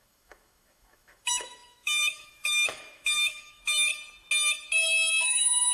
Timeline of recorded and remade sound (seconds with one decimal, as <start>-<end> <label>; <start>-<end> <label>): 0.0-3.9 remade; 3.9-4.8 recorded; 4.8-5.7 remade